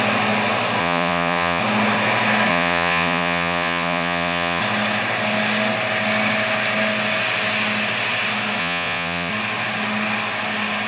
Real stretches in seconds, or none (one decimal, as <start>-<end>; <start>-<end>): 0.0-0.8; 1.6-2.5; 4.6-8.6; 9.3-10.9